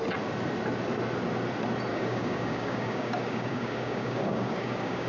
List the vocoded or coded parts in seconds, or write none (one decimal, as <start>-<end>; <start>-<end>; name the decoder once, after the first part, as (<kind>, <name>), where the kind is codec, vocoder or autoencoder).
1.9-5.1 (codec, DAC)